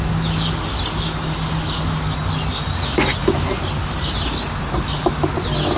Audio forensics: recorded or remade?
recorded